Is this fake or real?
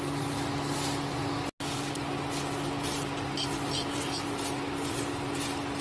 real